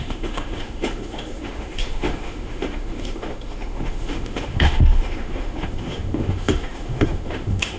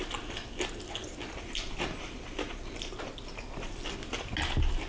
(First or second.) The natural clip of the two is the second